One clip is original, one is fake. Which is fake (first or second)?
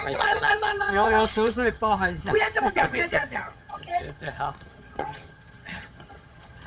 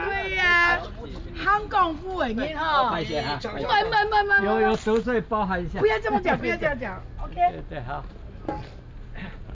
first